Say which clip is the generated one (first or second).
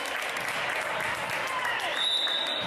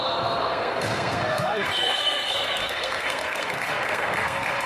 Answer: second